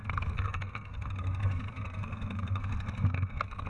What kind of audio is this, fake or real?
fake